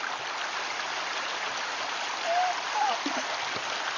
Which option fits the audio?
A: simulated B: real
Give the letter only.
B